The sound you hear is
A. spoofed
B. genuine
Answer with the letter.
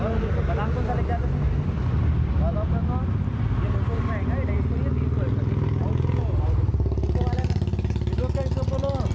B